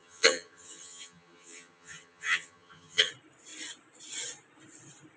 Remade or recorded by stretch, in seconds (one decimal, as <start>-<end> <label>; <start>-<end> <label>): 0.0-3.1 remade; 3.1-5.2 recorded